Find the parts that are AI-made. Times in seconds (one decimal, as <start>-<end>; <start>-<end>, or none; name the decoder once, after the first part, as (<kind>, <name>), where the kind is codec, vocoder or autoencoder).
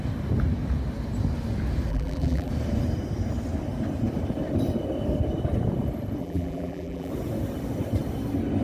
1.9-2.5 (vocoder, BigVGAN v2); 6.2-7.1